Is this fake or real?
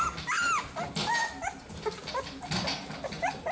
real